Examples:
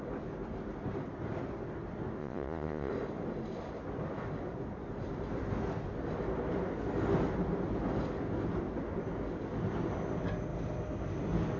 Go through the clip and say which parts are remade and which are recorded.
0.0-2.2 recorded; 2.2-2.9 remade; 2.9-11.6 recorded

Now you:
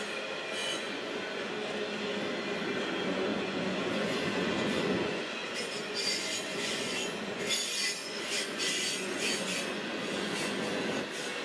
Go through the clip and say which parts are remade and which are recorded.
0.0-0.6 recorded; 0.6-1.5 remade; 1.5-3.3 recorded; 3.3-7.5 remade; 7.5-8.0 recorded; 8.0-10.9 remade; 10.9-11.4 recorded